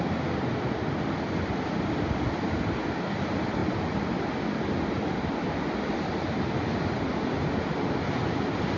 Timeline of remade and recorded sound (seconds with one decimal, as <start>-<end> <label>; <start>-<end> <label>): 0.0-8.8 recorded